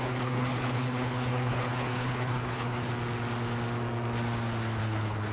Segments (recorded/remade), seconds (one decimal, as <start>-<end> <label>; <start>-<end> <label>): 0.0-2.9 remade; 2.9-4.8 recorded; 4.8-5.3 remade